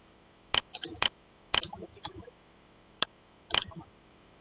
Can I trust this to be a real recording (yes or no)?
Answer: no